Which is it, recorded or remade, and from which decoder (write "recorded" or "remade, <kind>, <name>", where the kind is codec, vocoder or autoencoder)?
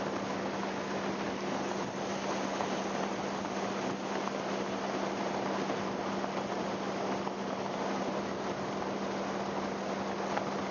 recorded